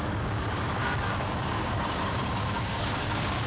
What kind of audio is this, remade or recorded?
remade